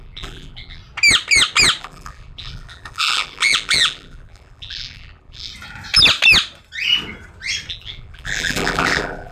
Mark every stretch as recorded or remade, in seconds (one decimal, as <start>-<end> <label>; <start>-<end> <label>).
0.0-0.8 remade; 0.8-1.8 recorded; 1.8-5.5 remade; 5.5-7.7 recorded; 7.7-9.3 remade